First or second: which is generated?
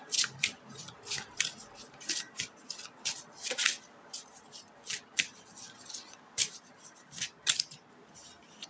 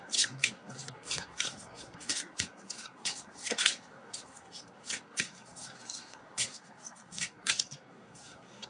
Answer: second